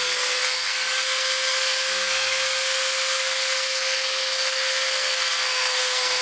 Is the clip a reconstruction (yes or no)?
yes